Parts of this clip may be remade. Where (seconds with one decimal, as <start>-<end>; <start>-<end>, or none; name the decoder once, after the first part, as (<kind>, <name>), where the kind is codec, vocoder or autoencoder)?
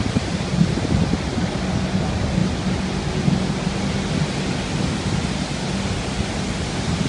none